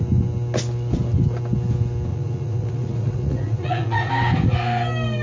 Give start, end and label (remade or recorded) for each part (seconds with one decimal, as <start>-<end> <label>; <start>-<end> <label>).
0.0-2.1 recorded; 2.1-4.1 remade; 4.1-5.2 recorded